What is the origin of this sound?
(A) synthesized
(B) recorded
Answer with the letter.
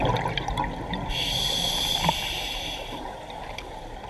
B